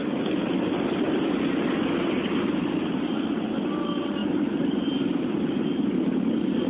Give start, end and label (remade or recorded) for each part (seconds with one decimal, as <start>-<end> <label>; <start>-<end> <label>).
0.0-6.7 recorded

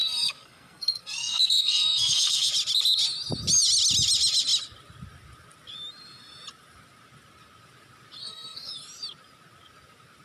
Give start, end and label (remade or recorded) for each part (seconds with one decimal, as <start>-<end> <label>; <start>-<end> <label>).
0.0-2.5 remade; 2.5-8.2 recorded; 8.2-8.7 remade; 8.7-10.2 recorded

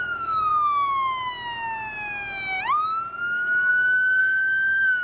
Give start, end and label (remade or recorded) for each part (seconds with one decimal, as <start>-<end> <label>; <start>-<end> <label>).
0.0-0.5 remade; 0.5-3.2 recorded; 3.2-3.7 remade; 3.7-4.2 recorded; 4.2-5.0 remade

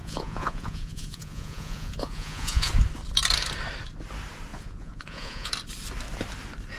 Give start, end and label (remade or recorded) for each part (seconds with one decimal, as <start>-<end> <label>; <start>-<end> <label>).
0.0-2.7 remade; 2.7-4.5 recorded; 4.5-5.5 remade; 5.5-6.8 recorded

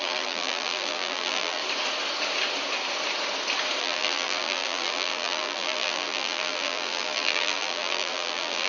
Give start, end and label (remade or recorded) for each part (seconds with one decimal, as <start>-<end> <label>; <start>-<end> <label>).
0.0-1.6 remade; 1.6-3.8 recorded; 3.8-8.7 remade

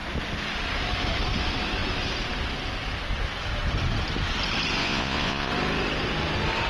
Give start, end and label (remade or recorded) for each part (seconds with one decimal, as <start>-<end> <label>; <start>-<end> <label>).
0.0-4.8 recorded; 4.8-5.5 remade; 5.5-6.7 recorded

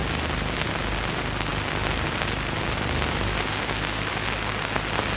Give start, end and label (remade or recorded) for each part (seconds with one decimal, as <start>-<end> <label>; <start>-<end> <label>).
0.0-5.2 recorded

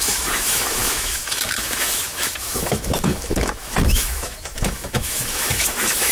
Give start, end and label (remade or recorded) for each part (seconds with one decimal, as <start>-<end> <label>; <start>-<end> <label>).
0.0-6.1 remade